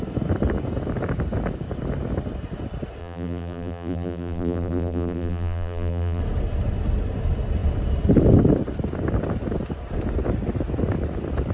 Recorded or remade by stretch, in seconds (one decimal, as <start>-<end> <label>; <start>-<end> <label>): 0.0-3.0 recorded; 3.0-6.2 remade; 6.2-11.5 recorded